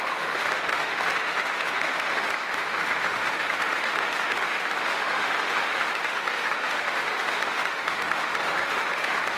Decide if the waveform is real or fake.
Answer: fake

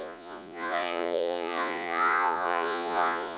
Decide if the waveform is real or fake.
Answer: fake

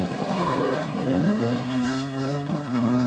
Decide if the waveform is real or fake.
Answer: fake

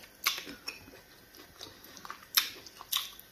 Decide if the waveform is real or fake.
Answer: real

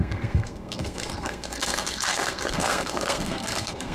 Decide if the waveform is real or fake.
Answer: fake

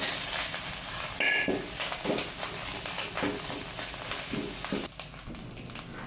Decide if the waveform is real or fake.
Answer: real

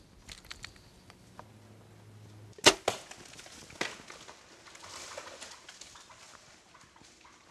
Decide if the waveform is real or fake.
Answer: real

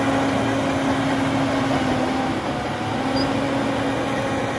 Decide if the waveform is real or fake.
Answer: real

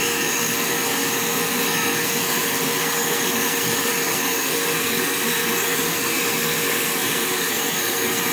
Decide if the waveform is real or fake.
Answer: fake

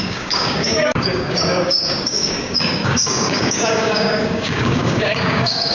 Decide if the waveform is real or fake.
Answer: fake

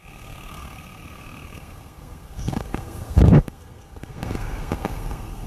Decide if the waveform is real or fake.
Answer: fake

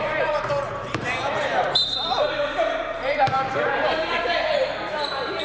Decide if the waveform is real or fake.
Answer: fake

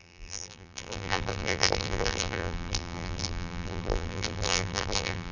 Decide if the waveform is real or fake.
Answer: fake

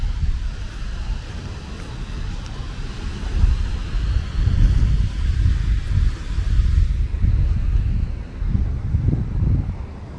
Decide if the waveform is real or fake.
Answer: real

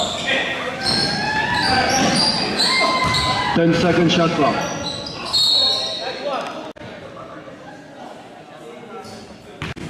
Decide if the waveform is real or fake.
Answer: real